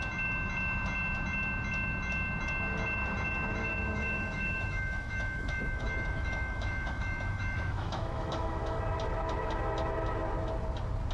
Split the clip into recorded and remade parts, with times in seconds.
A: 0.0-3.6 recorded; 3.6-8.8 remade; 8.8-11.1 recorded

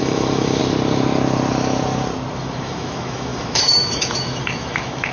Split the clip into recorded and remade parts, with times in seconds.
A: 0.0-0.6 remade; 0.6-2.3 recorded; 2.3-5.1 remade

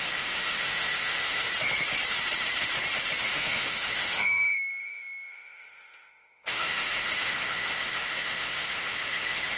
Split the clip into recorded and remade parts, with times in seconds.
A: 0.0-1.5 remade; 1.5-3.2 recorded; 3.2-9.6 remade

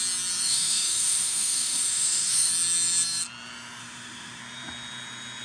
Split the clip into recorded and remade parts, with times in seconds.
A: 0.0-0.4 recorded; 0.4-2.5 remade; 2.5-3.8 recorded; 3.8-4.4 remade; 4.4-5.4 recorded

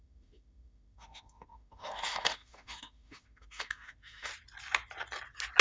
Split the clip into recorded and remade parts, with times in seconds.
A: 0.0-4.3 remade; 4.3-5.6 recorded

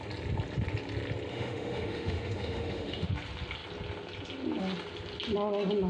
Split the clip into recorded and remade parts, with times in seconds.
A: 0.0-1.3 recorded; 1.3-3.1 remade; 3.1-5.9 recorded